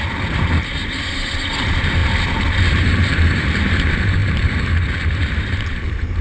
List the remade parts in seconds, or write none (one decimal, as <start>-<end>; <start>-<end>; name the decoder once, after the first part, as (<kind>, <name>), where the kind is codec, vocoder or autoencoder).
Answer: 0.0-0.8 (vocoder, BigVGAN v2); 1.5-6.2